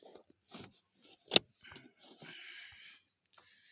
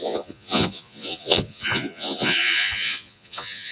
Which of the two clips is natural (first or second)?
first